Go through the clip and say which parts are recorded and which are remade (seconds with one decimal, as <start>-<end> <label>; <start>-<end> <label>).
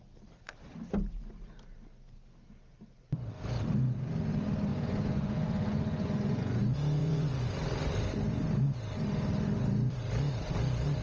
0.0-4.7 recorded; 4.7-6.6 remade; 6.6-7.0 recorded; 7.0-7.5 remade; 7.5-11.0 recorded